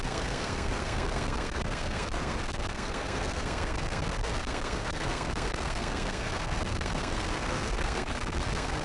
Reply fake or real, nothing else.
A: fake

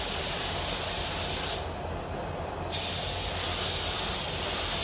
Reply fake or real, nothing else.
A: real